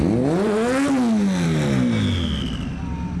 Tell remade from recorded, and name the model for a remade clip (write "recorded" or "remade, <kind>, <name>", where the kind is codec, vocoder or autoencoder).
recorded